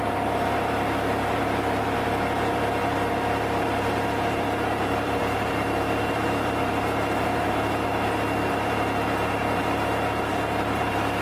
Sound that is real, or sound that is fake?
fake